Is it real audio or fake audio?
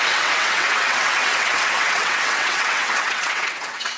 fake